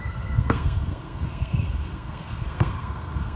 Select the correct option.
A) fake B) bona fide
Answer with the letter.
A